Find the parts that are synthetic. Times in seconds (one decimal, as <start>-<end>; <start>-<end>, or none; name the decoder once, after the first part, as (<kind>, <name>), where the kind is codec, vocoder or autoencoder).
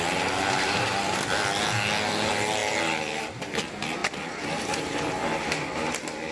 none